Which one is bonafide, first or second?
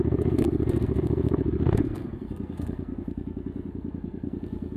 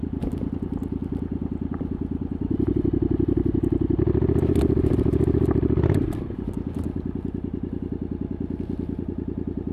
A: second